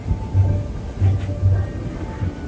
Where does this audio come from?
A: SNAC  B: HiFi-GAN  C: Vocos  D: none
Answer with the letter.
D